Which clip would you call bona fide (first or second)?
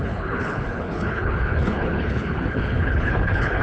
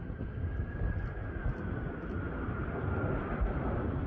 second